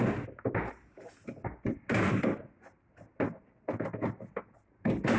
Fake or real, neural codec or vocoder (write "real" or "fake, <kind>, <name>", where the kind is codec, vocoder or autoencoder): real